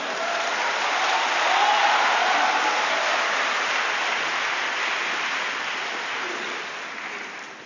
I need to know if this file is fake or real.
real